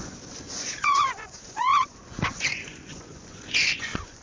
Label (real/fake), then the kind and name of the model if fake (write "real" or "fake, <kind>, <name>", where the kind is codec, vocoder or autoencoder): fake, vocoder, Vocos